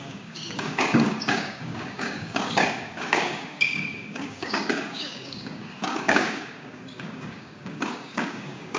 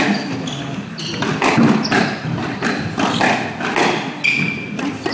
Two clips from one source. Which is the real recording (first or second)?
second